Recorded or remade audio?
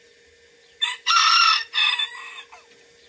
recorded